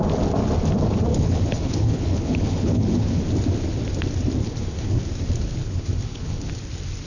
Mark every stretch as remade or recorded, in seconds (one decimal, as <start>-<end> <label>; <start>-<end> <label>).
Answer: 0.0-1.1 recorded; 1.1-3.2 remade; 3.2-4.4 recorded; 4.4-5.0 remade; 5.0-5.6 recorded; 5.6-6.5 remade; 6.5-7.1 recorded